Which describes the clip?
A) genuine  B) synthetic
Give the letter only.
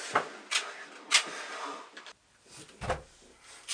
A